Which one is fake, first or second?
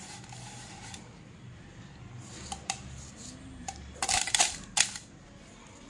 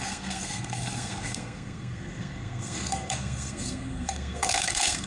second